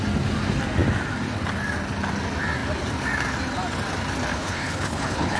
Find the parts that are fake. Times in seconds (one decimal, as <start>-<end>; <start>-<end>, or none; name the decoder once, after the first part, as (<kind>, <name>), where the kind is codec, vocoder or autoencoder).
4.3-5.4 (codec, HILCodec)